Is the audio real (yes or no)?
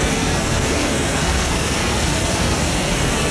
no